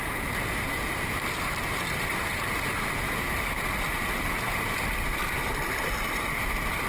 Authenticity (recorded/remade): recorded